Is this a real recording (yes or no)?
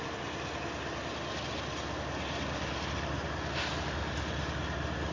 yes